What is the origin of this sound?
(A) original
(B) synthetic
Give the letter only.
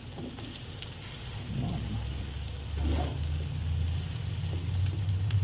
A